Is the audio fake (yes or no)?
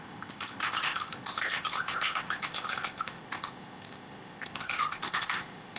yes